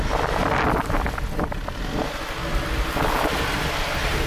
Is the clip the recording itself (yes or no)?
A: yes